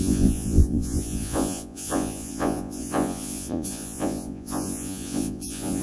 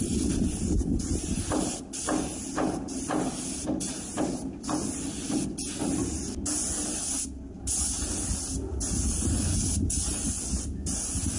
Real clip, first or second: second